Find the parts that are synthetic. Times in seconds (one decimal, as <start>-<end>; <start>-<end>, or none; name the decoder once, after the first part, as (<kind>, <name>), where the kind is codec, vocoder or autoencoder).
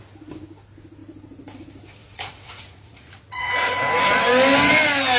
2.0-3.7 (vocoder, Vocos)